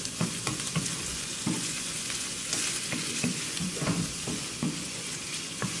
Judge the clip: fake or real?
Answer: fake